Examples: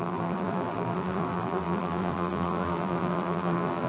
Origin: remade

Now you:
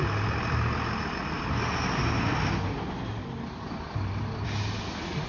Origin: recorded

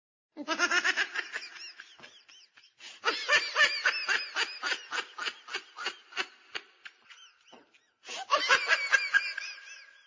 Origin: recorded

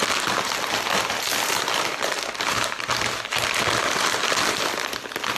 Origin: recorded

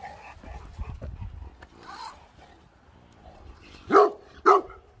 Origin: recorded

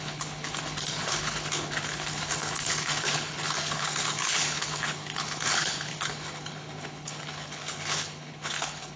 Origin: remade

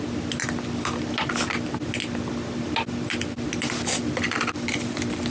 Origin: recorded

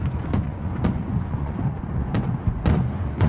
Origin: remade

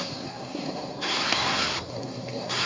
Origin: remade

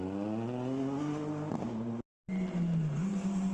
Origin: recorded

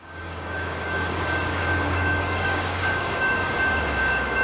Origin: remade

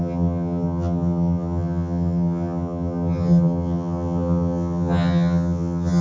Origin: remade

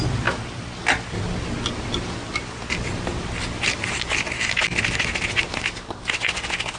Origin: recorded